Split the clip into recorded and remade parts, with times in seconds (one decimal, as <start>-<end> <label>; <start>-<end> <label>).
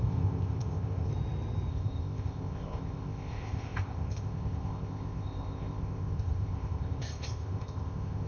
0.0-1.1 remade; 1.1-1.7 recorded; 1.7-8.3 remade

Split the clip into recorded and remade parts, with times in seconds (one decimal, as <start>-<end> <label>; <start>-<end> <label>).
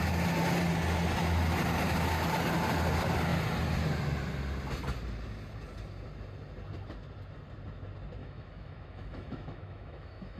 0.0-8.2 recorded; 8.2-10.4 remade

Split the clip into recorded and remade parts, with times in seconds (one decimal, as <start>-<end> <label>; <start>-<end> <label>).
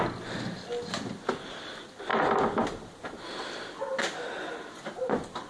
0.0-5.5 recorded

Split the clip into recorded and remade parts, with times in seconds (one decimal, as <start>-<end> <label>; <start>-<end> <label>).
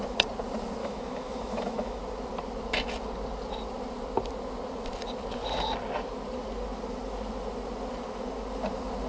0.0-0.8 recorded; 0.8-2.0 remade; 2.0-9.1 recorded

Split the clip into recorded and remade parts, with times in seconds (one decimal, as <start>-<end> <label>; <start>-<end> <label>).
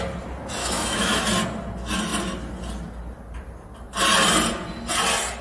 0.0-0.6 recorded; 0.6-1.2 remade; 1.2-5.4 recorded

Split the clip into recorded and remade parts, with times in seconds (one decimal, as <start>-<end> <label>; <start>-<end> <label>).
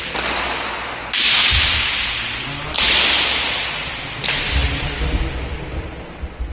0.0-6.5 recorded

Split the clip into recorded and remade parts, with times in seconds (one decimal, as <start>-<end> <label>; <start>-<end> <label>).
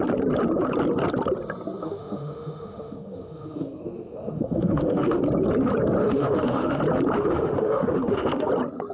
0.0-1.8 recorded; 1.8-5.2 remade; 5.2-6.0 recorded; 6.0-6.8 remade; 6.8-7.2 recorded; 7.2-8.5 remade; 8.5-8.9 recorded